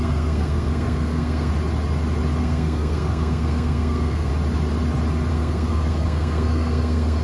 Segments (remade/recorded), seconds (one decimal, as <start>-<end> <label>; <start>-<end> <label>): 0.0-1.5 remade; 1.5-2.4 recorded; 2.4-4.3 remade; 4.3-5.3 recorded; 5.3-7.2 remade